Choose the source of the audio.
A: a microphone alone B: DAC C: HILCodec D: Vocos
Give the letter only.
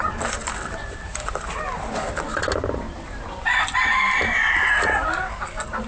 A